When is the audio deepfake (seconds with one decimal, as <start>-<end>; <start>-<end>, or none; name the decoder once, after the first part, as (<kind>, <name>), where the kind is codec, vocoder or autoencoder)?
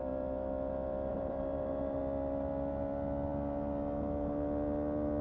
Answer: 1.1-2.0 (vocoder, BigVGAN v2)